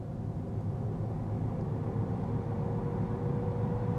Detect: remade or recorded recorded